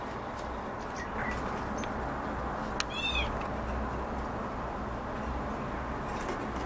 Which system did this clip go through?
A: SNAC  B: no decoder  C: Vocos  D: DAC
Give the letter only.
B